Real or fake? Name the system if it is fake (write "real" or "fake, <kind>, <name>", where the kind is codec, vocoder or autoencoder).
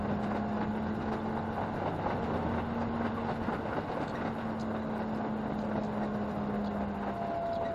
real